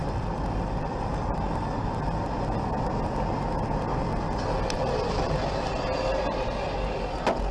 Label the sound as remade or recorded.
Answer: recorded